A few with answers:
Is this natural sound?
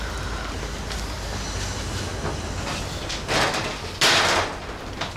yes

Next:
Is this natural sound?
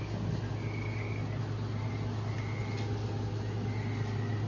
yes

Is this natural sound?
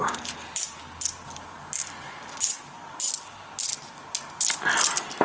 yes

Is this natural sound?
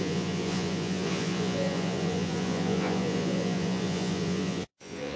no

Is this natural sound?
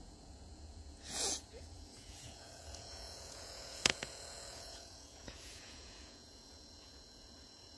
no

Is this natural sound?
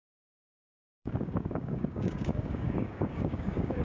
no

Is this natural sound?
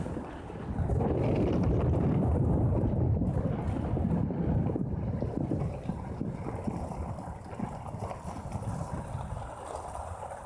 yes